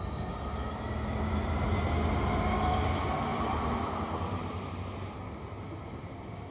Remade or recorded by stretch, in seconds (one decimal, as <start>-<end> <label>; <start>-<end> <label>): 0.0-3.3 recorded; 3.3-4.8 remade; 4.8-6.5 recorded

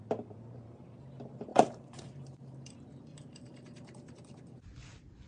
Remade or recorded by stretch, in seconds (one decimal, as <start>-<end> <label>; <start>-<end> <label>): 0.0-1.5 recorded; 1.5-4.5 remade; 4.5-5.3 recorded

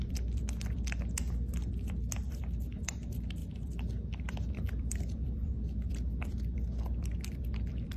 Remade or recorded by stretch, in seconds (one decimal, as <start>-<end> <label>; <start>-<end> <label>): 0.0-8.0 remade

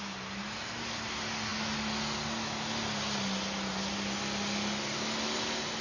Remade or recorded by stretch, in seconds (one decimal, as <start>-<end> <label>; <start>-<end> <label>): 0.0-5.8 recorded

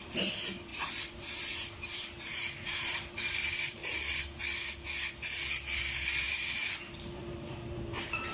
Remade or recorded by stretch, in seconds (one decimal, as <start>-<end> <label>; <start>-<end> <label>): 0.0-3.8 remade; 3.8-6.3 recorded; 6.3-8.3 remade